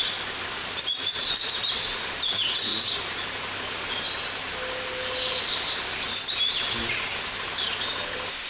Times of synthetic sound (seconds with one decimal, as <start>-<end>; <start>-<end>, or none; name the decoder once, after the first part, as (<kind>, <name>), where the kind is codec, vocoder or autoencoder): 0.6-1.3 (vocoder, Vocos)